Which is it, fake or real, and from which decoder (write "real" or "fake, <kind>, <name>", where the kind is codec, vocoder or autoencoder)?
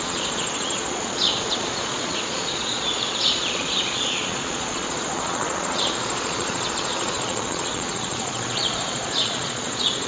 fake, vocoder, Vocos